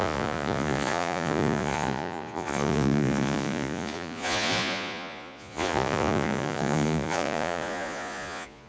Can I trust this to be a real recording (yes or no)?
no